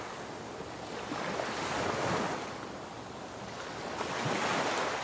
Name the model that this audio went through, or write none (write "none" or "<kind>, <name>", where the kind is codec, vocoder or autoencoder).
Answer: none